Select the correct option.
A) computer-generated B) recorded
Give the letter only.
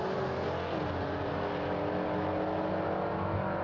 B